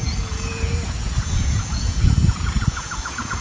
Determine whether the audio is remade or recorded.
remade